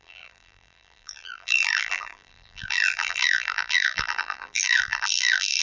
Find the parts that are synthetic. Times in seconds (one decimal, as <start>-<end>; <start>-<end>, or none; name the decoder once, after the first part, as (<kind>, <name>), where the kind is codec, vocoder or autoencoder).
0.0-5.6 (vocoder, BigVGAN v2)